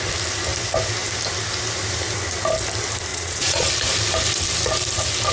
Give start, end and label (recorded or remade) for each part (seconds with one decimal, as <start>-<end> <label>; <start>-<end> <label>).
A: 0.0-3.1 recorded; 3.1-3.7 remade; 3.7-5.3 recorded